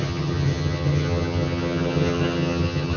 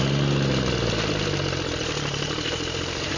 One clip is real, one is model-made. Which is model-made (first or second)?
first